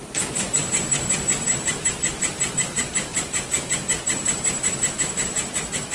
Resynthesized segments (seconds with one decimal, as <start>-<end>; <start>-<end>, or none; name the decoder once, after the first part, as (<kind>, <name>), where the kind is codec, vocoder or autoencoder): 0.0-5.9 (vocoder, BigVGAN v2)